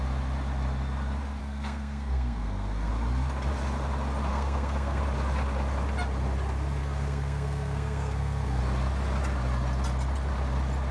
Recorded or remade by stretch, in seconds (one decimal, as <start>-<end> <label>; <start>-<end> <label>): 0.0-1.4 recorded; 1.4-2.9 remade; 2.9-4.3 recorded; 4.3-5.0 remade; 5.0-6.8 recorded; 6.8-8.6 remade; 8.6-10.9 recorded